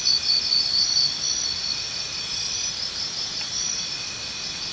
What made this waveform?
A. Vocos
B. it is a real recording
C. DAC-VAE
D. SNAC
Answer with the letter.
B